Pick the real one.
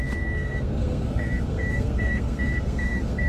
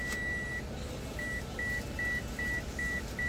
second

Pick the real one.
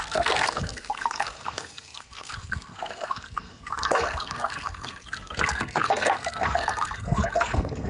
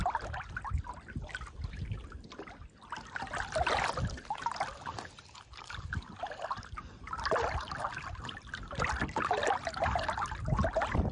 second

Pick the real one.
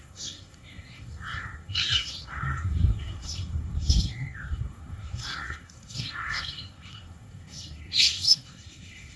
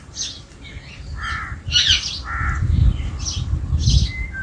second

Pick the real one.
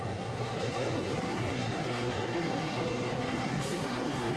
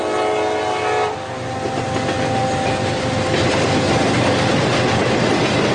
second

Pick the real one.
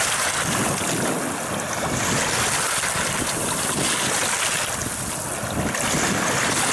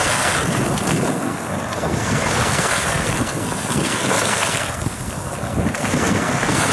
first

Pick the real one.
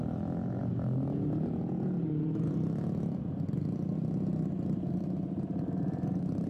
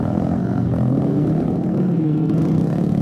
first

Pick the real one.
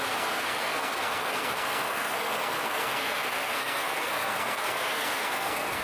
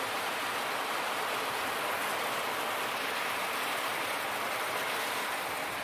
second